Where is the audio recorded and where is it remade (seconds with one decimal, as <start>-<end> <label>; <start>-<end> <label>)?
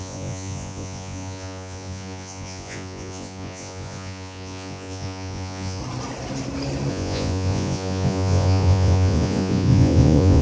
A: 0.0-5.8 remade; 5.8-6.9 recorded; 6.9-10.4 remade